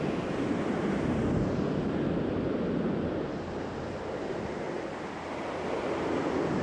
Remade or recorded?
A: recorded